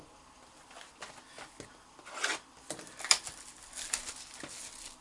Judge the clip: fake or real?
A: real